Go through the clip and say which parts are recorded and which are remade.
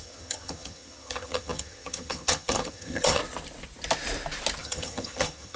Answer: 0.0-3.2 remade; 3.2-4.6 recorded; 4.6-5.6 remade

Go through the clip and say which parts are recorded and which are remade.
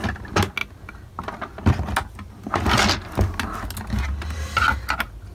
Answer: 0.0-5.3 recorded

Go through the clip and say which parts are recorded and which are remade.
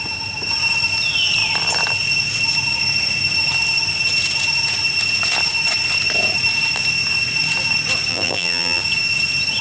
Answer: 0.0-8.1 recorded; 8.1-8.8 remade; 8.8-9.6 recorded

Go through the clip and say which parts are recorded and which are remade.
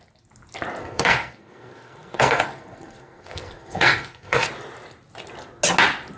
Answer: 0.0-0.8 recorded; 0.8-4.5 remade; 4.5-6.2 recorded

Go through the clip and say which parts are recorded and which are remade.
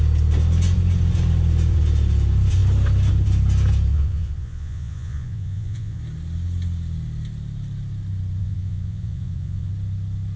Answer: 0.0-3.9 recorded; 3.9-6.0 remade; 6.0-8.4 recorded; 8.4-9.7 remade; 9.7-10.4 recorded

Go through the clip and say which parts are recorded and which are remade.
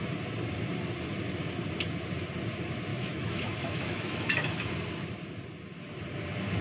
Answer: 0.0-2.9 recorded; 2.9-4.7 remade; 4.7-6.6 recorded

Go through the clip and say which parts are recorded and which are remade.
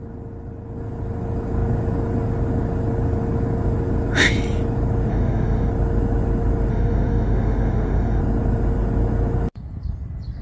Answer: 0.0-5.1 recorded; 5.1-5.7 remade; 5.7-6.7 recorded; 6.7-8.2 remade; 8.2-10.4 recorded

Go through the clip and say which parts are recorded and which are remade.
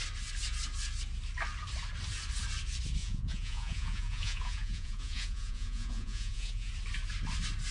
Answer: 0.0-3.0 recorded; 3.0-6.7 remade; 6.7-7.7 recorded